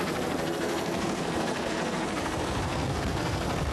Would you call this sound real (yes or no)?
no